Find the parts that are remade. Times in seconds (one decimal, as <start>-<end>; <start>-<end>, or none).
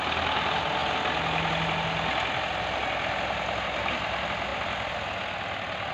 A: none